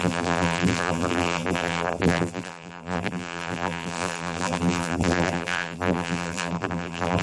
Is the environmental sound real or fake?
fake